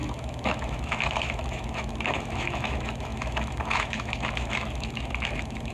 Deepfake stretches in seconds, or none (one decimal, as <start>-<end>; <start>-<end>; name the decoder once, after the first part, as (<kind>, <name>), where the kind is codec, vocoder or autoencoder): 0.0-5.7 (autoencoder, DAC-VAE)